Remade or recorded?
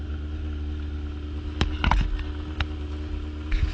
recorded